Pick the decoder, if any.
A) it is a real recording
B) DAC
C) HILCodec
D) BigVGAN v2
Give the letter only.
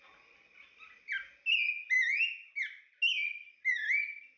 A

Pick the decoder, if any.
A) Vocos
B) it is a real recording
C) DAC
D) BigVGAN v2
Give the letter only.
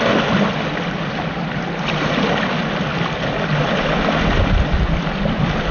B